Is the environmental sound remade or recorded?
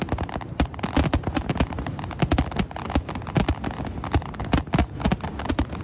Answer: recorded